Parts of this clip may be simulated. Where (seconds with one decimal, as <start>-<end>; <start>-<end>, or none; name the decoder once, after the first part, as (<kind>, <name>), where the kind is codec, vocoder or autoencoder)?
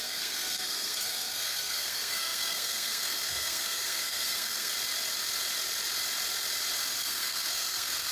0.0-4.7 (codec, SNAC); 7.0-8.1